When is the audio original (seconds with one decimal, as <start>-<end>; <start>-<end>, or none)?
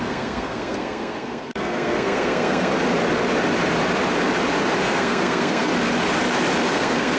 2.7-4.8; 5.7-6.7